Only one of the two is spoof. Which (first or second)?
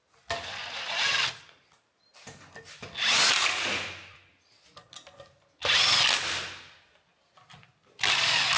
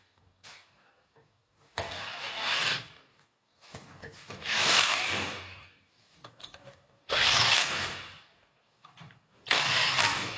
second